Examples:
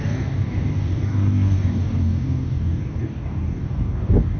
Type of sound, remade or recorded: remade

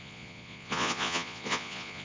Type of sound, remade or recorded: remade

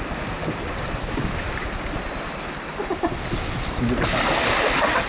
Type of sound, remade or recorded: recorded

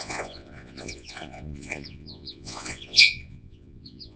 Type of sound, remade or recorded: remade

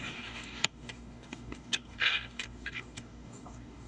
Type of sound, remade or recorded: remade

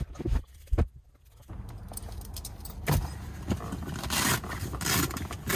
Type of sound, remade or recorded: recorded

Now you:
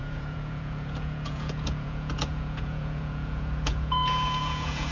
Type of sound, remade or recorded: remade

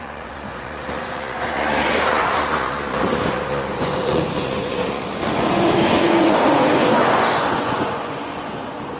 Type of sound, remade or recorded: remade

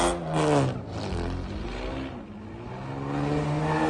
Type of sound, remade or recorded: recorded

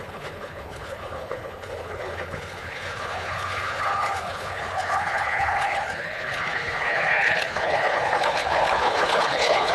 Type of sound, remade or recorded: remade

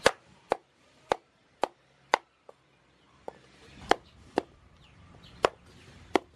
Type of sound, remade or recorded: remade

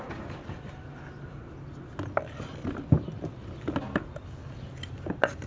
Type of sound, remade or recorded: recorded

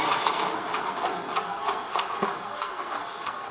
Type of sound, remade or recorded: remade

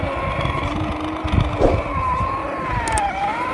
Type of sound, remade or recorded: recorded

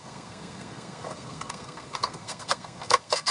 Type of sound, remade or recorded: remade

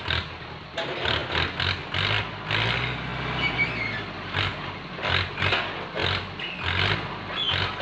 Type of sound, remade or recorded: recorded